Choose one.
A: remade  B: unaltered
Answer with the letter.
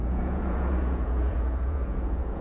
A